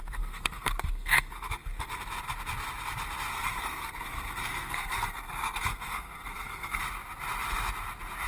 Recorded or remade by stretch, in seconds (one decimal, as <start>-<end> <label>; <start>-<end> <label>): 0.0-2.0 remade; 2.0-3.3 recorded; 3.3-6.8 remade; 6.8-8.3 recorded